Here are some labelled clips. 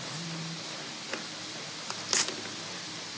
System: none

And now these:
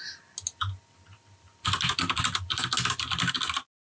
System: none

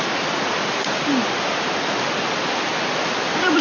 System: none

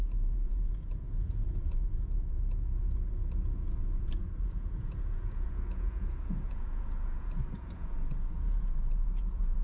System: vocoder, Vocos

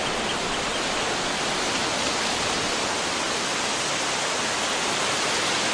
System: none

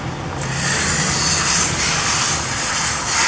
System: none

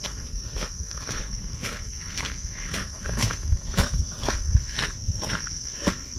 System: codec, SNAC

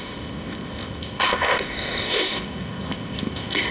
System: codec, ZipCodec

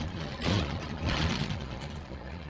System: vocoder, Vocos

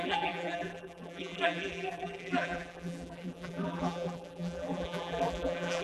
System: vocoder, BigVGAN v2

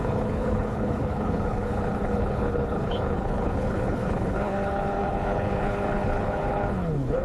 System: codec, HILCodec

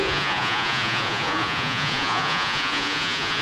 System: vocoder, Vocos